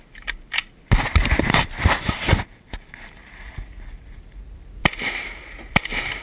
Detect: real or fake real